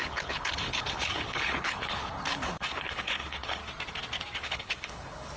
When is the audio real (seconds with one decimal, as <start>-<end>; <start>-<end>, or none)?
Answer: 3.6-4.4